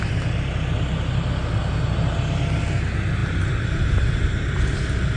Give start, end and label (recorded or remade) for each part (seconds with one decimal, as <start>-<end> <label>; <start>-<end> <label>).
0.0-5.2 recorded